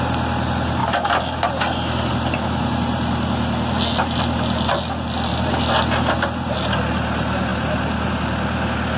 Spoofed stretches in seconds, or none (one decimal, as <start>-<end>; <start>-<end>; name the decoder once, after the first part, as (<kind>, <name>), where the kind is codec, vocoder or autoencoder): none